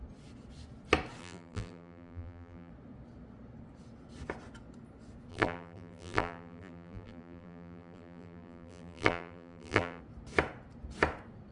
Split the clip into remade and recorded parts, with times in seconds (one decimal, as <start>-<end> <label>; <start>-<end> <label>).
0.0-1.2 recorded; 1.2-2.7 remade; 2.7-5.3 recorded; 5.3-10.0 remade; 10.0-11.5 recorded